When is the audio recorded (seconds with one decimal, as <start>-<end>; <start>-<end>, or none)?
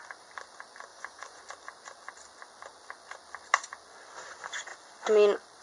0.0-0.9; 1.4-5.6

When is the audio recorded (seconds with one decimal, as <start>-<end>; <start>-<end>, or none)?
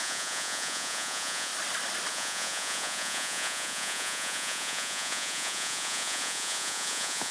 1.5-2.1